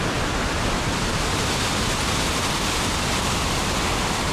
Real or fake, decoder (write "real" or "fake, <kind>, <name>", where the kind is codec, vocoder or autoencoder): real